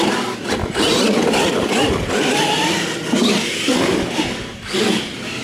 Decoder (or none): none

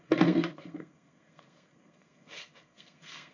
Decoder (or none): codec, SNAC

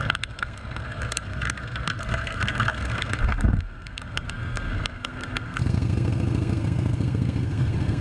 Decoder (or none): codec, SNAC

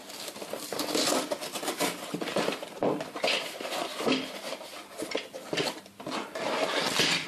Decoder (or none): none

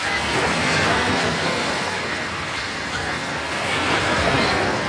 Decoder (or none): codec, SNAC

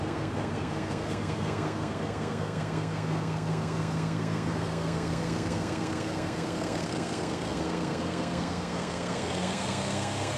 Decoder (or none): codec, SNAC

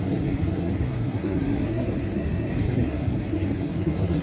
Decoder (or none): codec, SNAC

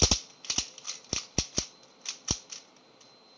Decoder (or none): none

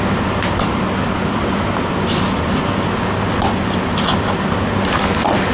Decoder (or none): none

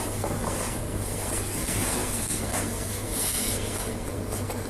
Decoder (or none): codec, SNAC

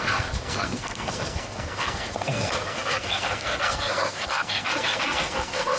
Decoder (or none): codec, SNAC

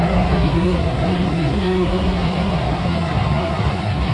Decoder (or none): codec, SNAC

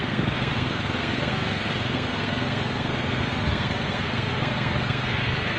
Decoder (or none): codec, SNAC